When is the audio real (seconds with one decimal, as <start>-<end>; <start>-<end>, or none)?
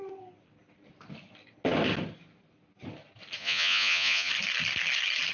0.0-3.4; 4.3-5.3